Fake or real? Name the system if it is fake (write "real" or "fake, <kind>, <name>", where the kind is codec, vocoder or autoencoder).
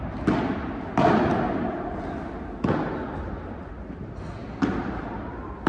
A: real